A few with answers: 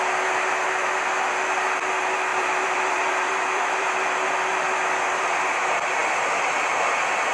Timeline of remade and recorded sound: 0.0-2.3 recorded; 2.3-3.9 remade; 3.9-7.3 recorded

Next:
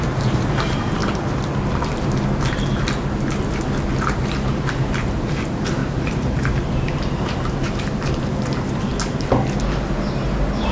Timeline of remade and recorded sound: 0.0-1.0 remade; 1.0-3.9 recorded; 3.9-8.9 remade; 8.9-10.7 recorded